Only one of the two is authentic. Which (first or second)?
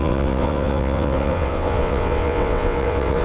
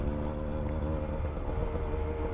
second